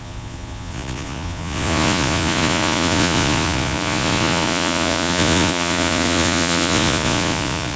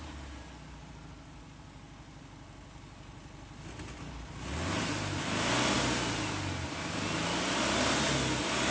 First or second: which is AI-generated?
first